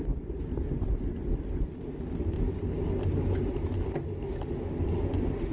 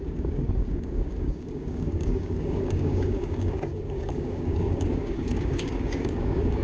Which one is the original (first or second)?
first